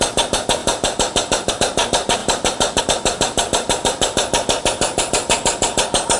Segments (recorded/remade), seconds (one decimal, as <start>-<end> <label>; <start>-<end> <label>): 0.0-6.2 recorded